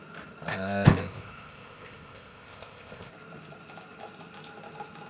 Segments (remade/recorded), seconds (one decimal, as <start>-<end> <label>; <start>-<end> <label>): 0.0-0.5 recorded; 0.5-3.1 remade; 3.1-5.1 recorded